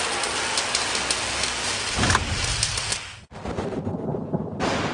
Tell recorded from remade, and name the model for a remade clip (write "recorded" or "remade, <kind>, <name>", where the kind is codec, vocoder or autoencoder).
recorded